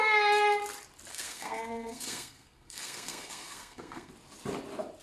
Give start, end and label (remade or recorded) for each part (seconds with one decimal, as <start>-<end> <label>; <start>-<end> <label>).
0.0-1.1 recorded; 1.1-4.1 remade; 4.1-5.0 recorded